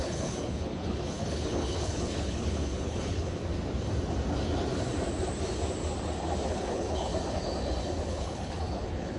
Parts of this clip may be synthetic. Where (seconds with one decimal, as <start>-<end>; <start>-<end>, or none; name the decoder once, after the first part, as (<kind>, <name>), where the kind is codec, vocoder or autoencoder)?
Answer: 0.0-3.4 (codec, HILCodec); 6.5-7.1; 8.1-9.2